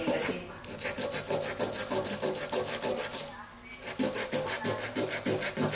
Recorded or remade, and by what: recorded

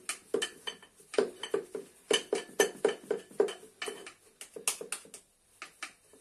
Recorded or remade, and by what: recorded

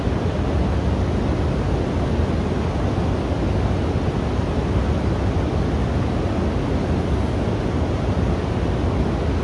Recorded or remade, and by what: recorded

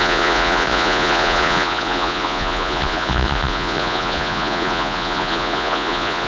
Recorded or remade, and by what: remade, vocoder, Vocos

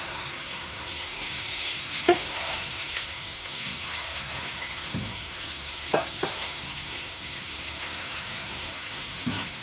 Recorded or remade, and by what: remade, codec, SNAC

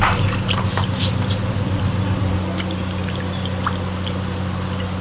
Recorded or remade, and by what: recorded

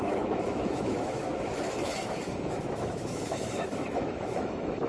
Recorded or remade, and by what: remade, autoencoder, DAC-VAE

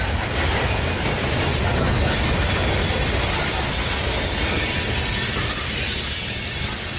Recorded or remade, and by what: recorded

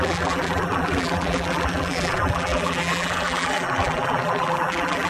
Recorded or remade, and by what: remade, vocoder, BigVGAN v2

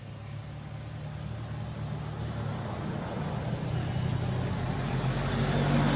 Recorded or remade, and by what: recorded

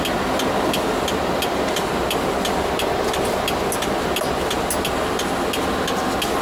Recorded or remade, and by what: recorded